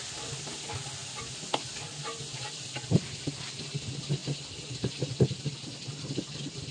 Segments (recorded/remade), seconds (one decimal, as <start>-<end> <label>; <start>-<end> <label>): 0.0-6.7 recorded